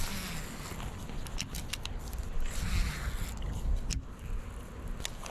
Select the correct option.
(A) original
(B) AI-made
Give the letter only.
A